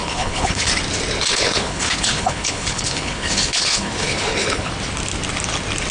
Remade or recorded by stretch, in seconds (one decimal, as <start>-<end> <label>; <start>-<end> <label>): 0.0-0.7 remade; 0.7-1.3 recorded; 1.3-4.7 remade; 4.7-5.9 recorded